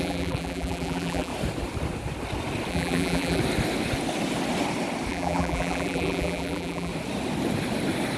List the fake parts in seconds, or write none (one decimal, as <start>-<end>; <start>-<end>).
0.0-1.3; 2.7-3.4; 5.1-6.9